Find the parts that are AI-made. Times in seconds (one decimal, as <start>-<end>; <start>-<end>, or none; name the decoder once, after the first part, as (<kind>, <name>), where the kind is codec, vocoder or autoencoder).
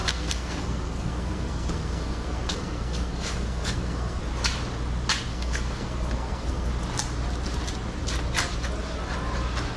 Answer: 0.0-4.2 (codec, SNAC); 5.3-6.7